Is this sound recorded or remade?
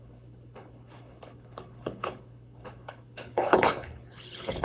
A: remade